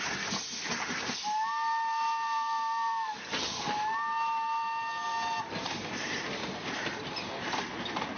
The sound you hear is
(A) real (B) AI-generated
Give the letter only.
A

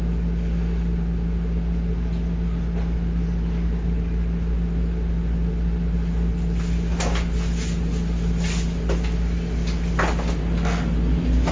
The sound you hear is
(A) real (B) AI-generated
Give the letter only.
A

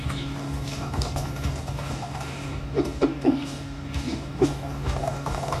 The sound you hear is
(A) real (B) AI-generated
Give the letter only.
B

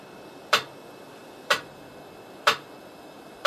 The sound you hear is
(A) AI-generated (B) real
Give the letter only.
A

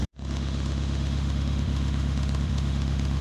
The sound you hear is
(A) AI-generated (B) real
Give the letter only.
A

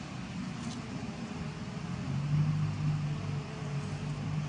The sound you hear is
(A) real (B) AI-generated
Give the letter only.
A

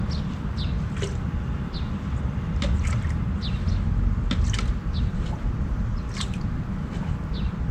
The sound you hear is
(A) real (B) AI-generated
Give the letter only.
A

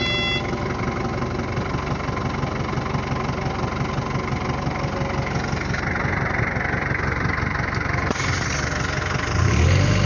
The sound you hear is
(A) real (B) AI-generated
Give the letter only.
A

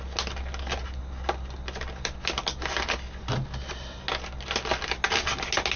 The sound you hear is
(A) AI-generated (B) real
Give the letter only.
B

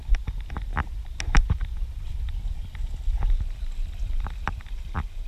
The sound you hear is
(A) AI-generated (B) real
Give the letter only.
B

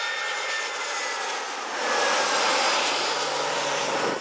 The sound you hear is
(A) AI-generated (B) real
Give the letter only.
B